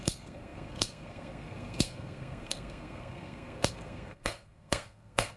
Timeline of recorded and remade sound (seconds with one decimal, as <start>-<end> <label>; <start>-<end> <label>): 0.0-5.4 remade